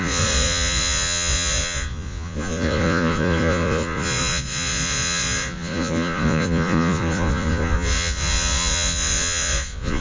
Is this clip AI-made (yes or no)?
yes